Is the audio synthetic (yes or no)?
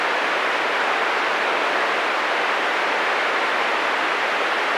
no